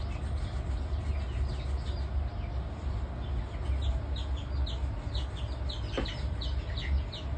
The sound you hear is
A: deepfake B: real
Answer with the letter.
B